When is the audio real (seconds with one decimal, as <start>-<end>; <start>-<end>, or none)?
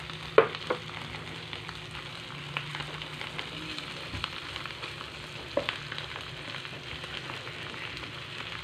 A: 0.0-8.6